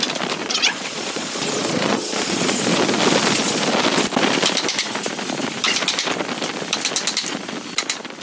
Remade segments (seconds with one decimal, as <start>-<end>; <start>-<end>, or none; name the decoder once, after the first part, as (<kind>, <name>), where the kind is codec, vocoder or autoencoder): 0.4-2.8 (vocoder, Vocos)